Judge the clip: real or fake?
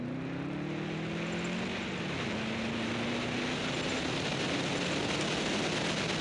real